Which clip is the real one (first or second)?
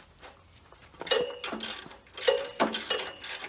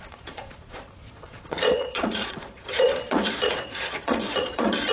first